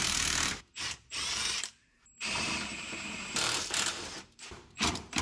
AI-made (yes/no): yes